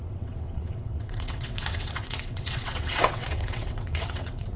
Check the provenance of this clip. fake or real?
fake